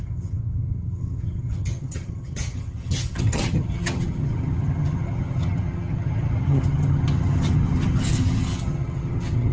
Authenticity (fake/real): fake